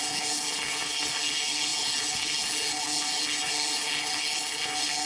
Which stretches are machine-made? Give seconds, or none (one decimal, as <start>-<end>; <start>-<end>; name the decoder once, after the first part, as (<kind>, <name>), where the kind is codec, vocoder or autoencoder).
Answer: 0.0-5.1 (codec, HILCodec)